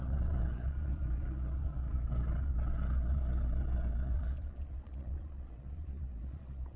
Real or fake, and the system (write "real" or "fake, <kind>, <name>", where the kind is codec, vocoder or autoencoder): fake, vocoder, Vocos